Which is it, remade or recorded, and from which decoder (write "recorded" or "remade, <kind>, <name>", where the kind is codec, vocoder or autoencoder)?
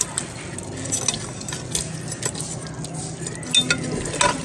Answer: recorded